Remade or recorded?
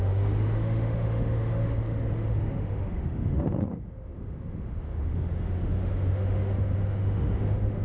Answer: remade